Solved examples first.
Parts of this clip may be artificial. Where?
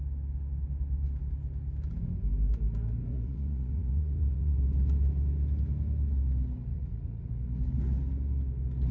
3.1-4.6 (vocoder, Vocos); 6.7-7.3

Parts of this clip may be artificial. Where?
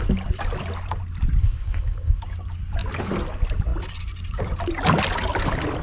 1.4-2.2 (codec, ZipCodec)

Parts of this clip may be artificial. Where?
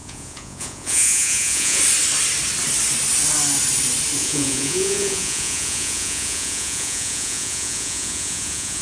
0.0-1.8 (vocoder, Vocos); 4.2-8.8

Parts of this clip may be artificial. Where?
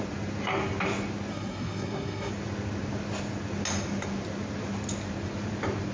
1.3-2.3 (codec, SNAC)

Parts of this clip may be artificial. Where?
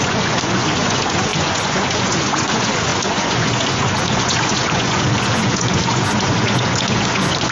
0.0-7.5 (vocoder, Vocos)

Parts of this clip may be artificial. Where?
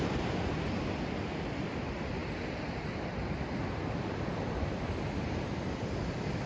none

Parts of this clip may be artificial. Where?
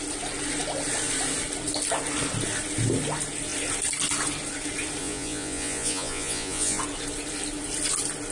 5.0-6.8 (vocoder, Vocos)